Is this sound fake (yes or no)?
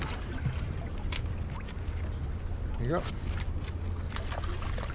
no